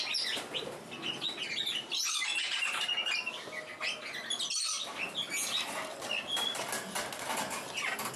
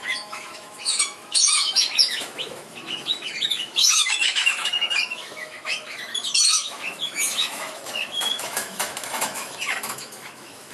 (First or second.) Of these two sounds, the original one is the first